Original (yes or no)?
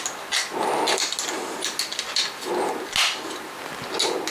yes